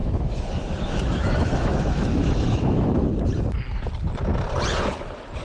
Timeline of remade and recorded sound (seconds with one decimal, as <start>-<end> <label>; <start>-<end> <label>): 0.0-3.2 remade; 3.2-5.4 recorded